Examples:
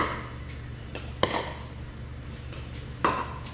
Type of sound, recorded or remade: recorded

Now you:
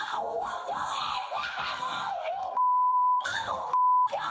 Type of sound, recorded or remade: remade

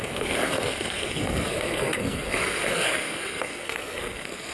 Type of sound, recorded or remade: remade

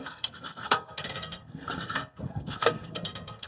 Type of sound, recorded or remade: remade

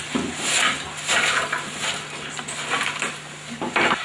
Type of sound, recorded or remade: recorded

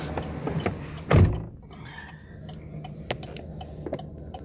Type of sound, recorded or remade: recorded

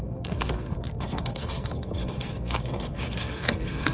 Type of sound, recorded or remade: remade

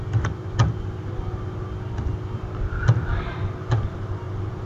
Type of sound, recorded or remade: recorded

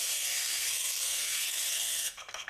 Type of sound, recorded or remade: remade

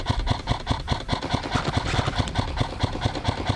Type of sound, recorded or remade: recorded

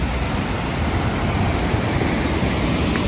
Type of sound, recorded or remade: recorded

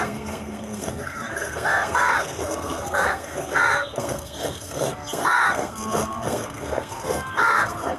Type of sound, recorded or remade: remade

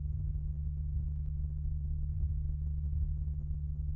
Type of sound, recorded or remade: recorded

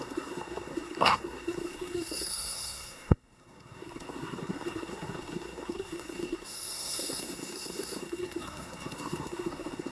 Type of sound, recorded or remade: remade